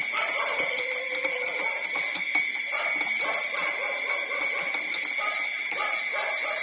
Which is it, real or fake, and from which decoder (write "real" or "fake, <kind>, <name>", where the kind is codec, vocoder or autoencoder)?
real